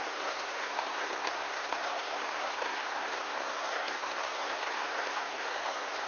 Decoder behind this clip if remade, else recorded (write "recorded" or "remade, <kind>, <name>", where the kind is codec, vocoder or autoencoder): remade, codec, SNAC